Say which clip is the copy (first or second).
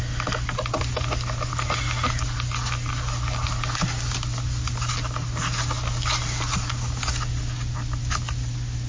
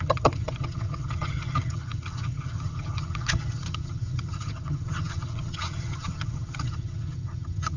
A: second